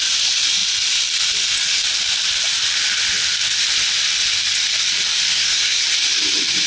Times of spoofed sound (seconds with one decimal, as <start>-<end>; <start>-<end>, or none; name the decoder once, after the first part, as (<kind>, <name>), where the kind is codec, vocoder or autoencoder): 5.3-5.8 (codec, SNAC)